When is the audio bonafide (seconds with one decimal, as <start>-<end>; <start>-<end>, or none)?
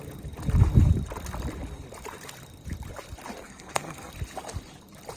0.0-3.4; 4.1-5.2